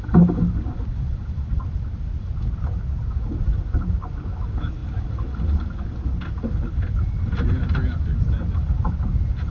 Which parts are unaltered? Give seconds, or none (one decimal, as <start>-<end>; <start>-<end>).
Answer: 0.0-9.5